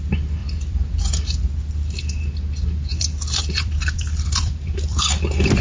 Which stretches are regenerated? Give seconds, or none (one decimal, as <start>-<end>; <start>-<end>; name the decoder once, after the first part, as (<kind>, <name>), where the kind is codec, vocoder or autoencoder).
0.4-1.0 (vocoder, BigVGAN v2); 2.9-5.1